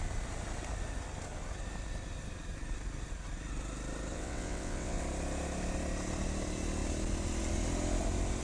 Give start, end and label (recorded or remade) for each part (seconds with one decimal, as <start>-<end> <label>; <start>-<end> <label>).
0.0-4.1 recorded; 4.1-5.0 remade; 5.0-8.4 recorded